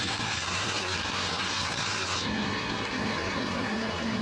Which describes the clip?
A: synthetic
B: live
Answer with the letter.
A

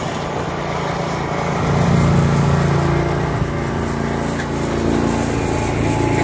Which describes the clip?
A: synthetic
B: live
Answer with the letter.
B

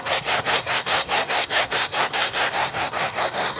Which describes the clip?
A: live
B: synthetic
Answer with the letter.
B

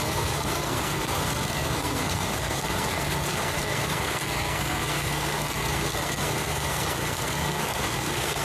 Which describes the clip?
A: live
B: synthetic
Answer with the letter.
B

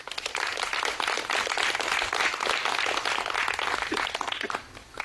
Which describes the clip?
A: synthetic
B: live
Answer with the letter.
B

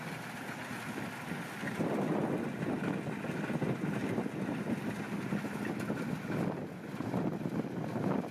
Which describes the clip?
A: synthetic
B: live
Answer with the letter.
B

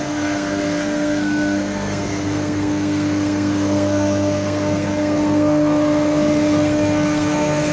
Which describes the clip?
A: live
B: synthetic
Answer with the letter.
B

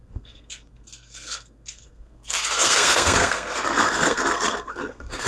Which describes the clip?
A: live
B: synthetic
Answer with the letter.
B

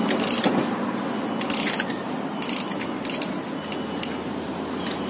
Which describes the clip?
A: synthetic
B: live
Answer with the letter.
B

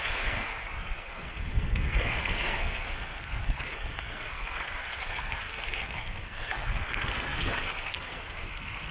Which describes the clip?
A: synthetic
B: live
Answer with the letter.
A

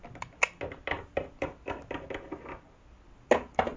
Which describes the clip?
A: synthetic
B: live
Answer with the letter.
B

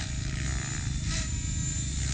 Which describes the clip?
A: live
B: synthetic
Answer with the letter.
A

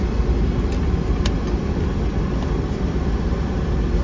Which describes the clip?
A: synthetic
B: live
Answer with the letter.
B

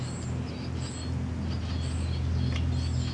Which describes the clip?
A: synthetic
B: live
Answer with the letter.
B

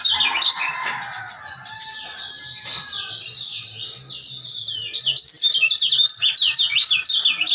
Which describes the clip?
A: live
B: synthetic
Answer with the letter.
A